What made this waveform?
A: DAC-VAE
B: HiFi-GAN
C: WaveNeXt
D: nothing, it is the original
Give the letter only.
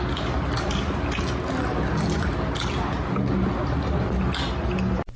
D